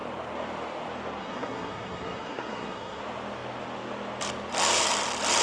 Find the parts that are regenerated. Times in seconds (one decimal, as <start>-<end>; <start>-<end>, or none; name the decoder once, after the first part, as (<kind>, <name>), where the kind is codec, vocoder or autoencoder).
1.2-3.0 (codec, SNAC)